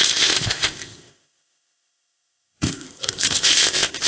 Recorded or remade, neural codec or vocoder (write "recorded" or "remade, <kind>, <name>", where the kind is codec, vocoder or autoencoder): remade, codec, ZipCodec